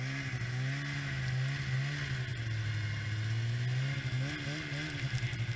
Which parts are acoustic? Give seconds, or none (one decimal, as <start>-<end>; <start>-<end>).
0.0-5.6